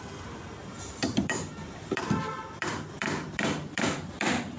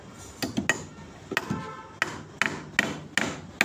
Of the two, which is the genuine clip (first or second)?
second